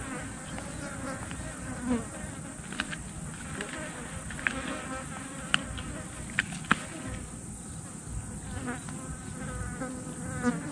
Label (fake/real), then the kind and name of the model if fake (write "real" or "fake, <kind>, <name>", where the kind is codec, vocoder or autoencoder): real